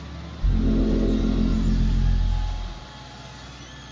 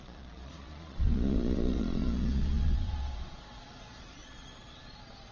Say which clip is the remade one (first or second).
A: second